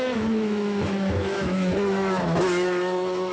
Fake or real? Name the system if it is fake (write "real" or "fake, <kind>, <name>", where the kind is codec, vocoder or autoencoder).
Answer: fake, autoencoder, DAC-VAE